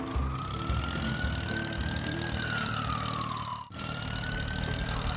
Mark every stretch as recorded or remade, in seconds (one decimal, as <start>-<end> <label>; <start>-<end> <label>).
0.0-3.5 recorded; 3.5-4.0 remade; 4.0-5.2 recorded